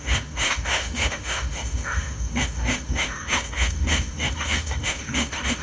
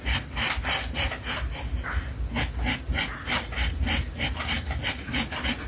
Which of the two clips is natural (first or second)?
second